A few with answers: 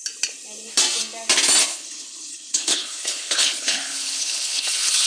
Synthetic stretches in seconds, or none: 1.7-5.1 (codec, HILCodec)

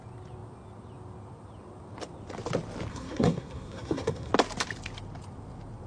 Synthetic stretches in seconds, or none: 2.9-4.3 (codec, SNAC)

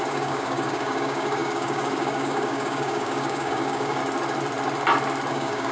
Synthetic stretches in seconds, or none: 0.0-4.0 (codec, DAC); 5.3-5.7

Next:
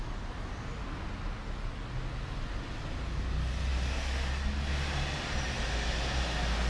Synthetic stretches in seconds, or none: none